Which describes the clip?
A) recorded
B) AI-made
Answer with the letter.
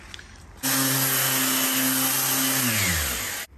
A